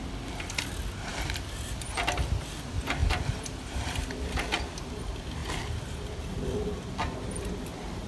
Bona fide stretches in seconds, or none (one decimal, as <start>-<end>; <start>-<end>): 0.0-1.1; 2.0-3.0; 4.8-8.1